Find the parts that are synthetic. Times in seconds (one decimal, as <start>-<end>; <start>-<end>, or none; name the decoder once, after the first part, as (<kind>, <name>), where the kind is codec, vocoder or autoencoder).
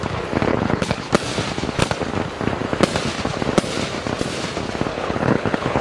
0.5-1.1 (codec, HILCodec); 4.9-5.8